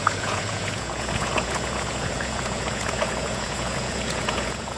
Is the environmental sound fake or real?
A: fake